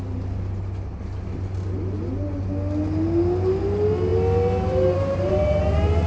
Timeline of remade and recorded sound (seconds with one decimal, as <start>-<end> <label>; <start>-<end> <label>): 0.0-6.1 recorded